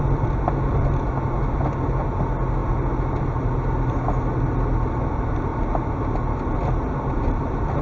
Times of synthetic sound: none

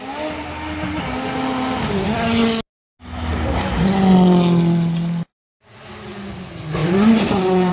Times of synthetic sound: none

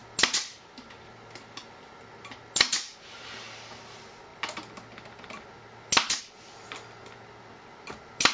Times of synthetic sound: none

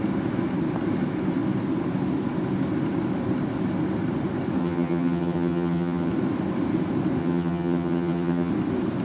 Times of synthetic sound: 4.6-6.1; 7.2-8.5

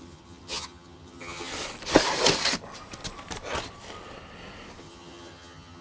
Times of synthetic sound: 0.0-1.5; 4.8-5.8